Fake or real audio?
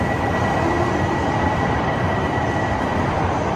real